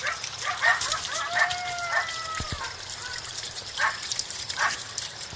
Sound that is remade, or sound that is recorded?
remade